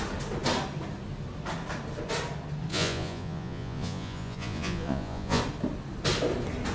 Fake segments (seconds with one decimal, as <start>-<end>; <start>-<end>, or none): 2.7-5.4